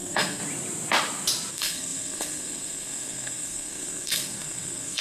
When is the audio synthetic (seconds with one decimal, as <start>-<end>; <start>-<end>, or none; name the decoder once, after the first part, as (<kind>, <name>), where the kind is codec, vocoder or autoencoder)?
0.0-0.4 (codec, SNAC); 1.5-5.0

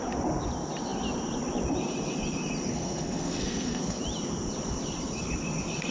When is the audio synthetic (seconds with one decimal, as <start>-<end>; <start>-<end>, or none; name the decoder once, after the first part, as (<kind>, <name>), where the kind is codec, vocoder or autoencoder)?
2.7-4.0 (codec, SNAC)